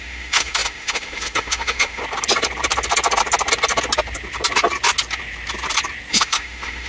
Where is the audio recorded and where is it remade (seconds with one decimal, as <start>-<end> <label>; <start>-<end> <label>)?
0.0-2.0 remade; 2.0-6.1 recorded; 6.1-6.9 remade